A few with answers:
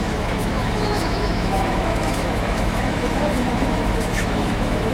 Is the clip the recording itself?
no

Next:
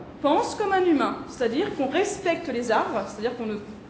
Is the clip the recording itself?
yes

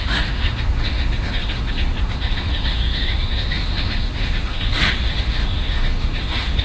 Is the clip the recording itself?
no